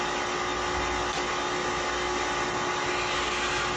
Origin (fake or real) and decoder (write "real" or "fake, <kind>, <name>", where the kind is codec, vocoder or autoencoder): real